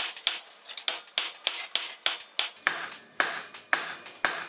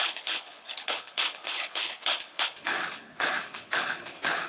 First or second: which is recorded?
first